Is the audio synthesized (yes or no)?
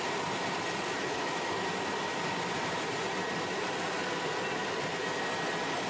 no